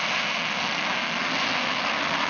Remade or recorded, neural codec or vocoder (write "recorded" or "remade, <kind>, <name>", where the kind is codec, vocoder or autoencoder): recorded